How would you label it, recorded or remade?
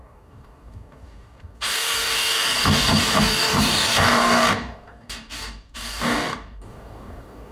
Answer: remade